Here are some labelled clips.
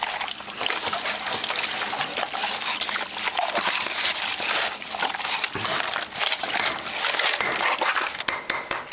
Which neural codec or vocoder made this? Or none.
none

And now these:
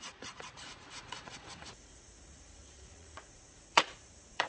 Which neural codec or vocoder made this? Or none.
vocoder, Vocos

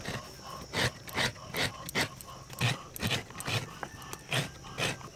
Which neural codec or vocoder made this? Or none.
none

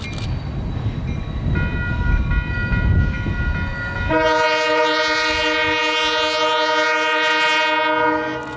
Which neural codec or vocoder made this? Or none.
none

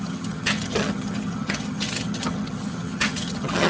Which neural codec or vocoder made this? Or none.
vocoder, HiFi-GAN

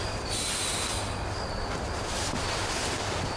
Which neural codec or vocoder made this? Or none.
none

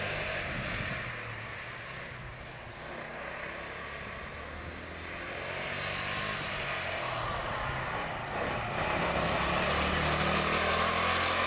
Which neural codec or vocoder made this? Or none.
none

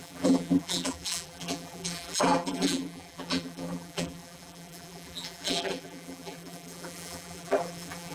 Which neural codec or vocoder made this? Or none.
vocoder, BigVGAN v2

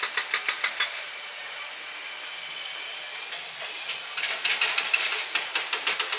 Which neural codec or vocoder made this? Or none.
none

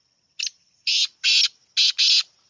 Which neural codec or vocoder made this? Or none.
none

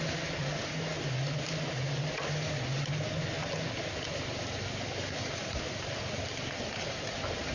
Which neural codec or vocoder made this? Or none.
none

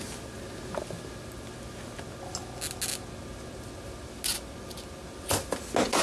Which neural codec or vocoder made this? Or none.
none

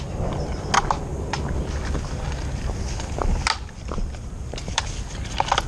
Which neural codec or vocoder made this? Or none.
none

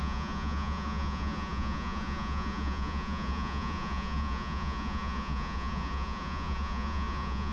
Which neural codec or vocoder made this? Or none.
vocoder, Vocos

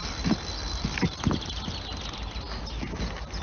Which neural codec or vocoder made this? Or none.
none